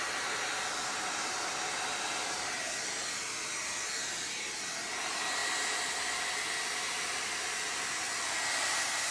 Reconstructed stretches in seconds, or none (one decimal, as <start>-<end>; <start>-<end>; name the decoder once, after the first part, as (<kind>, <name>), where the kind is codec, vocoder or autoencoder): none